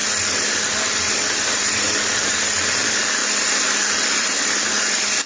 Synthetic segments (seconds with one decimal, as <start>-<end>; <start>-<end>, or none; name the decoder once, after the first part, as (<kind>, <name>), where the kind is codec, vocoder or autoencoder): 1.1-3.2 (vocoder, BigVGAN v2); 3.9-5.3